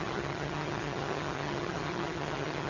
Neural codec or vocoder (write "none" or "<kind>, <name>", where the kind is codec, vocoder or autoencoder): vocoder, HiFi-GAN